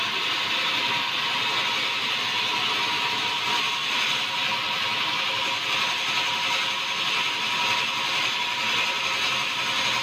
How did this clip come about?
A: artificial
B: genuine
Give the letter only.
B